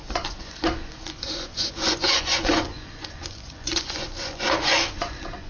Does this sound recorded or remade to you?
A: remade